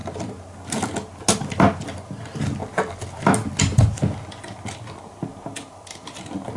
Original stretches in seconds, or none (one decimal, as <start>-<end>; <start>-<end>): 0.0-6.6